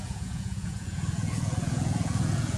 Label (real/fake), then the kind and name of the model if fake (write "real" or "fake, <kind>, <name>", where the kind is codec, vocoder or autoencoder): fake, vocoder, Vocos